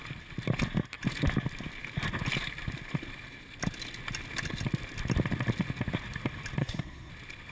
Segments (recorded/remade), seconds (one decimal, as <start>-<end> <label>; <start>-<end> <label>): 0.0-6.6 recorded; 6.6-7.1 remade; 7.1-7.5 recorded